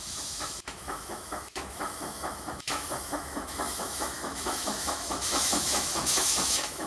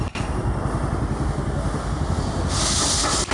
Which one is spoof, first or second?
first